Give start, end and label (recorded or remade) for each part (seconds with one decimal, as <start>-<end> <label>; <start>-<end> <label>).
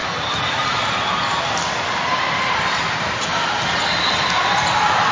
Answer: 0.0-2.2 recorded; 2.2-3.3 remade; 3.3-4.1 recorded; 4.1-5.1 remade